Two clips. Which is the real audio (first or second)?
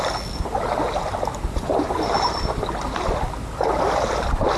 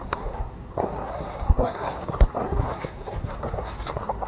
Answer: first